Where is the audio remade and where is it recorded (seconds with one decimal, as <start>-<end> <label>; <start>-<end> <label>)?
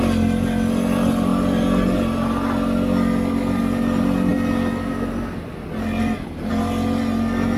0.0-7.6 recorded